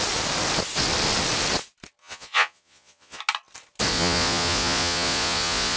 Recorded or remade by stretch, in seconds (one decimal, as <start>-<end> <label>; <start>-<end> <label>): 0.0-2.0 recorded; 2.0-3.2 remade; 3.2-3.9 recorded; 3.9-5.8 remade

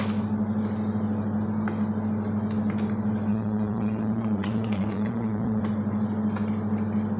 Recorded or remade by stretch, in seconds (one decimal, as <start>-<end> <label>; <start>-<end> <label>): 0.0-3.3 recorded; 3.3-5.6 remade; 5.6-7.2 recorded